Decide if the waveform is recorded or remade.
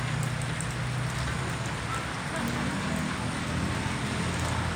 recorded